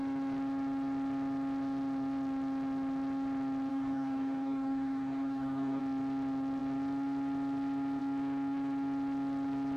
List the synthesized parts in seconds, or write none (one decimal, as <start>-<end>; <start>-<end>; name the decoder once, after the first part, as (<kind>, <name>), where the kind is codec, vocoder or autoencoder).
3.7-5.8 (codec, DAC)